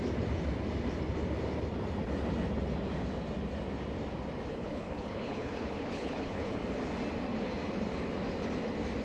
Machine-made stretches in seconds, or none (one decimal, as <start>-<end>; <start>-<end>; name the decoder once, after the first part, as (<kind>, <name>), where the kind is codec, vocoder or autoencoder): 4.5-6.6 (codec, HILCodec)